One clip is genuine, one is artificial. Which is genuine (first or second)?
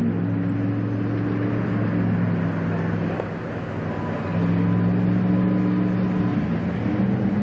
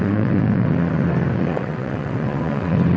first